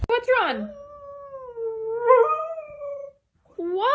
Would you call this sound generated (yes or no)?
no